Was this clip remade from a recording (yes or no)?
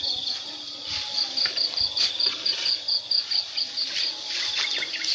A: no